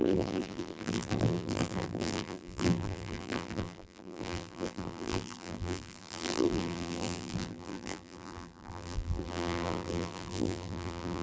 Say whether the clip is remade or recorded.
remade